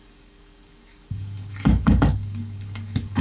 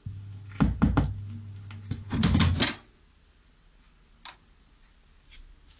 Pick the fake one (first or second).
first